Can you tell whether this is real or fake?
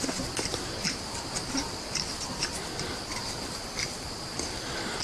real